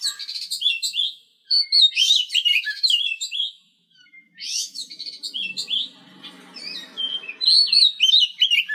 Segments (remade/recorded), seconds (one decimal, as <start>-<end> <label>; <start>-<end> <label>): 0.0-2.5 recorded; 2.5-4.9 remade; 4.9-8.7 recorded